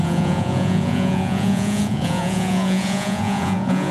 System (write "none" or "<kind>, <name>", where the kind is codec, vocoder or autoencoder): vocoder, Vocos